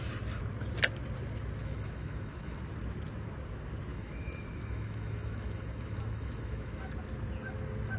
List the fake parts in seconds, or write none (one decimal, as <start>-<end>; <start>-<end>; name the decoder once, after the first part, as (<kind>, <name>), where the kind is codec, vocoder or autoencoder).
1.6-2.6 (autoencoder, DAC-VAE); 3.9-6.9